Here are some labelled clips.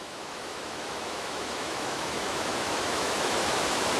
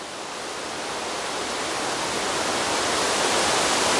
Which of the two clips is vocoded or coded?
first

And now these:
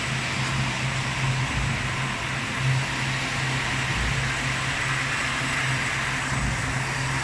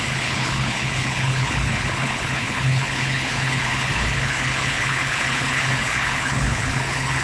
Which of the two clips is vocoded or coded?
second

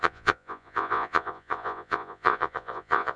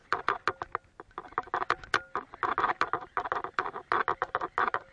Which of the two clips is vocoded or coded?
first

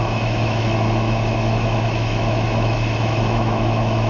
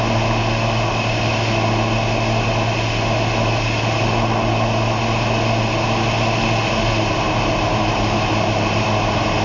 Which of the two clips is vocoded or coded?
first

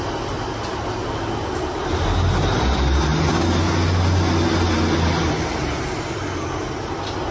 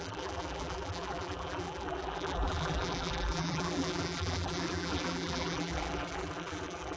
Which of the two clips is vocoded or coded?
second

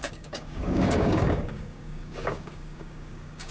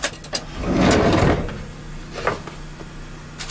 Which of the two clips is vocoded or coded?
first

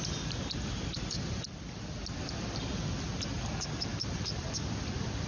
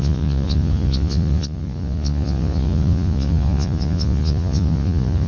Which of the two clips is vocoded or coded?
second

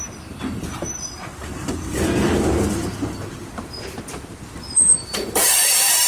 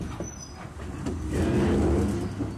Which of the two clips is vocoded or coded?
first